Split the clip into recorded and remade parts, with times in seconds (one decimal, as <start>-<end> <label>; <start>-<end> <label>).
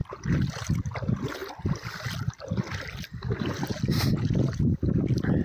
0.0-5.4 recorded